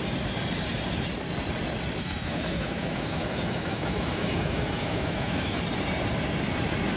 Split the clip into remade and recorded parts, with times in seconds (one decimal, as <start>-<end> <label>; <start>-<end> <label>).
0.0-2.0 recorded; 2.0-5.6 remade; 5.6-7.0 recorded